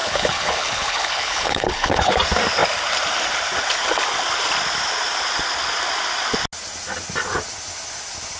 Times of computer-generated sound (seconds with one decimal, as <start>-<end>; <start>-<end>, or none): 0.0-2.1